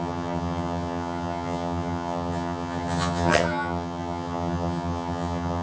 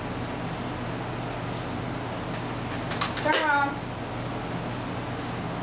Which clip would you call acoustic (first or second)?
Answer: second